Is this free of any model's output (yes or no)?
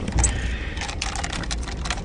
yes